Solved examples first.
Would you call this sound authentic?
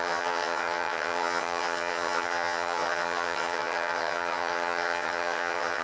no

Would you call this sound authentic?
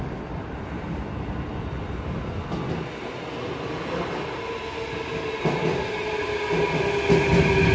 yes